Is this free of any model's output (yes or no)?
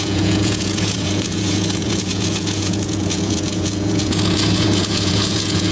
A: no